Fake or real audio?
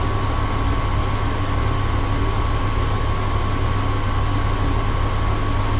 real